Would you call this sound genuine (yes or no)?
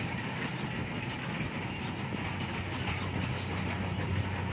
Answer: yes